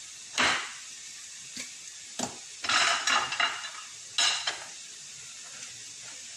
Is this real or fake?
real